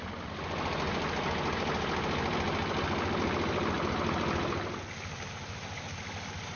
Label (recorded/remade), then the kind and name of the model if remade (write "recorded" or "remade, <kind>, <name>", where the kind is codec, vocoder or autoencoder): remade, vocoder, BigVGAN v2